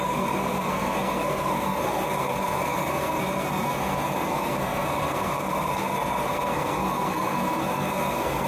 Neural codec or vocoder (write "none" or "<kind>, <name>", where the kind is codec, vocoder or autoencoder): codec, SNAC